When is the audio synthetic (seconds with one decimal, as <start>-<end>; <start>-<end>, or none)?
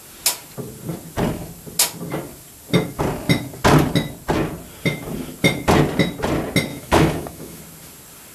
6.7-7.6